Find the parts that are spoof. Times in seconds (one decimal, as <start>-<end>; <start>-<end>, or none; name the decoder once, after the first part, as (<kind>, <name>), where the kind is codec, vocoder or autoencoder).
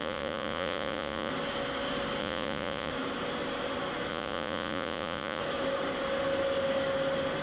0.0-1.3 (vocoder, Vocos); 2.2-2.9; 4.1-5.4